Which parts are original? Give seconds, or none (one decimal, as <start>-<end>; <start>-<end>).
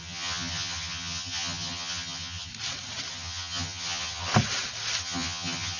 2.5-3.1; 4.3-5.0